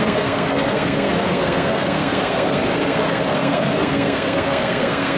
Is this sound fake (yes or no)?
yes